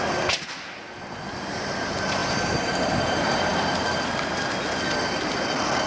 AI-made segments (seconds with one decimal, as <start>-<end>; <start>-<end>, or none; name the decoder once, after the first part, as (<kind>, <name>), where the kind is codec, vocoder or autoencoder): none